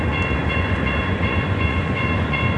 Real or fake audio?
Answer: fake